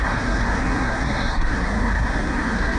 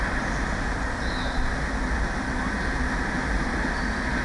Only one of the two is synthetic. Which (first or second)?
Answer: first